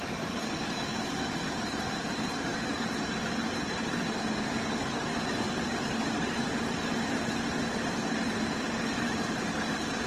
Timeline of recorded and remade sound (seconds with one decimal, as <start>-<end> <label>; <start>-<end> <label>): 0.0-0.9 remade; 0.9-1.5 recorded; 1.5-10.1 remade